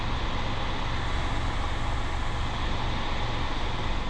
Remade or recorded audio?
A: recorded